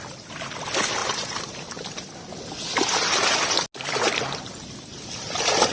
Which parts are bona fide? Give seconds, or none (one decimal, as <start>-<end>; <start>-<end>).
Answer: 0.0-5.7